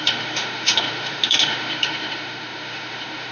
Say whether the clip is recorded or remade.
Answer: remade